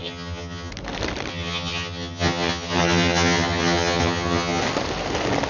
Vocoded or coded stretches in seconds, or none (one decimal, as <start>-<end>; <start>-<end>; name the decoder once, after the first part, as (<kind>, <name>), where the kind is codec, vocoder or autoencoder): 0.0-0.7 (vocoder, HiFi-GAN); 1.3-4.6